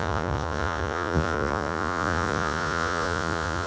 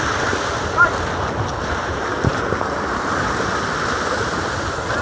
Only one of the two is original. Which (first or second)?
second